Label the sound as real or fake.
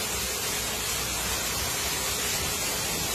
real